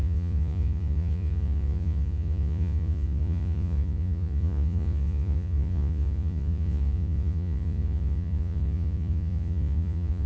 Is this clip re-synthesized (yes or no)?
yes